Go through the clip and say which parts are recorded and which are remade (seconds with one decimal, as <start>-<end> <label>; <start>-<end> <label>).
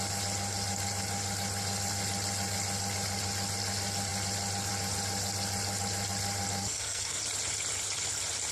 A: 0.0-6.6 recorded; 6.6-7.2 remade; 7.2-8.5 recorded